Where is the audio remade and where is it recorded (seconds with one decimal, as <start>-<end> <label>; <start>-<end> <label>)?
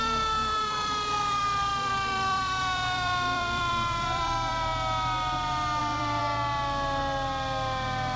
0.0-4.7 remade; 4.7-5.8 recorded; 5.8-6.2 remade; 6.2-8.2 recorded